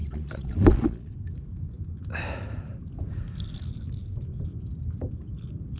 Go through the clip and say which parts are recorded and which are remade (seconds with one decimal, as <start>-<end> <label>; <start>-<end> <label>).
0.0-1.1 remade; 1.1-5.8 recorded